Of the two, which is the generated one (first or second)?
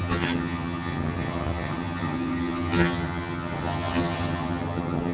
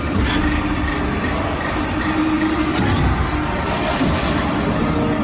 first